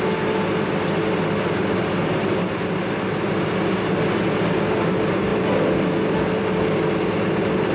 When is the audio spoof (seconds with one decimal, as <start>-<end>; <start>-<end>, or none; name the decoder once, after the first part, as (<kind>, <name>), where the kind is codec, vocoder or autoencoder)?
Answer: none